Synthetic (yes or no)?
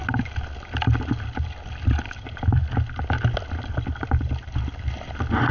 no